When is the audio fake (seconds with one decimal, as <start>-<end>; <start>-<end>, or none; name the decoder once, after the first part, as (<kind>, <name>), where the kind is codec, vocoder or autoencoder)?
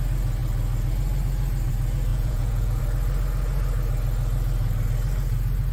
2.1-2.8 (vocoder, Vocos)